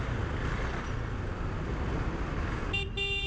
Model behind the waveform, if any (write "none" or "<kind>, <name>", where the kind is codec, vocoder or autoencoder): none